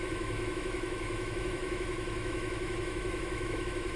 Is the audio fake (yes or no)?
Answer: yes